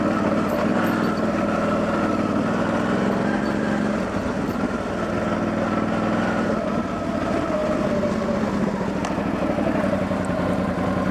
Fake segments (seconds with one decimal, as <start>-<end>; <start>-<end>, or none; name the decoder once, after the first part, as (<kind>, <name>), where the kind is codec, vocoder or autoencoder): none